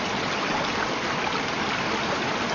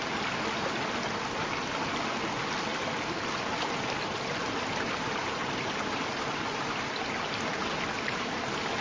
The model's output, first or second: first